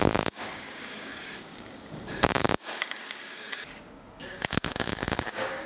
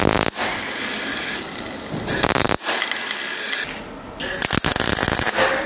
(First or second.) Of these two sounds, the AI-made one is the first